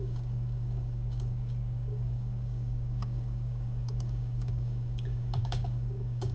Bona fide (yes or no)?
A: no